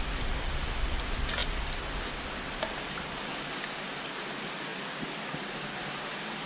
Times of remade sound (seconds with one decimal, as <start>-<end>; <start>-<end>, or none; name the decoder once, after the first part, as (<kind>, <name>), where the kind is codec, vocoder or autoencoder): none